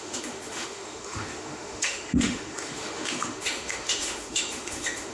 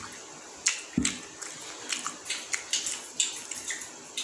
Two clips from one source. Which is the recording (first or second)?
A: second